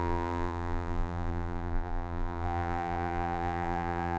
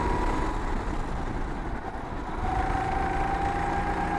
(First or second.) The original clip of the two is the second